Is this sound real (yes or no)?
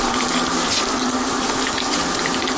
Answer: yes